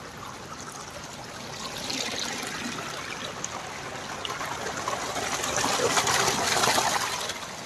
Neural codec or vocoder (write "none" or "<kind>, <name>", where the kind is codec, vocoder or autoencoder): none